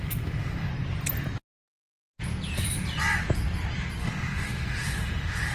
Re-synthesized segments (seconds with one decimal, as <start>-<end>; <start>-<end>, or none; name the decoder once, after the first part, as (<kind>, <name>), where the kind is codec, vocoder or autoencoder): 0.0-0.7 (autoencoder, DAC-VAE); 4.0-5.5